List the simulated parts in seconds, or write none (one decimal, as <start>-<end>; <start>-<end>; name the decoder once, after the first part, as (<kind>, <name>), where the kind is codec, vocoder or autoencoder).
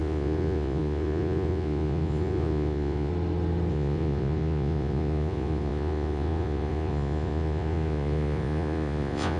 0.0-3.1 (vocoder, Vocos); 3.7-9.4